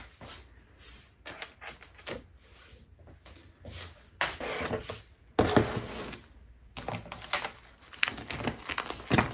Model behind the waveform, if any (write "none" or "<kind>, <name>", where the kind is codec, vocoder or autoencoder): none